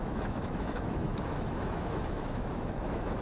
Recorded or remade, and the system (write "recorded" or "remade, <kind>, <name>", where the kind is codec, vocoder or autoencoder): remade, autoencoder, DAC-VAE